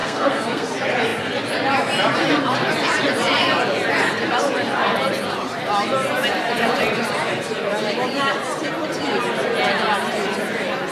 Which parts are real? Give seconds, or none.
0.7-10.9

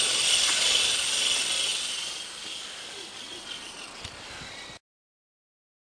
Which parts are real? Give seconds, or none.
0.0-5.9